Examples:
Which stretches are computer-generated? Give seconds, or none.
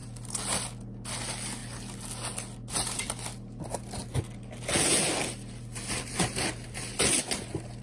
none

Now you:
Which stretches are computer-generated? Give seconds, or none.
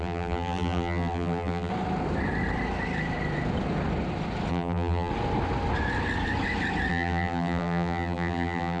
0.0-1.7 (vocoder, BigVGAN v2); 4.5-5.1; 6.9-8.8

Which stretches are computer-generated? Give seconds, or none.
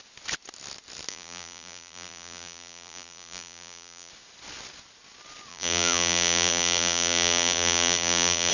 1.1-4.1 (vocoder, BigVGAN v2); 5.5-8.5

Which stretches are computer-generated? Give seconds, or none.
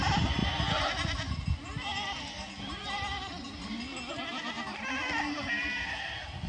none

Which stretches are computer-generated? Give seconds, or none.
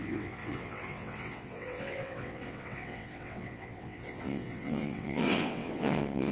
0.0-6.3 (vocoder, WaveNeXt)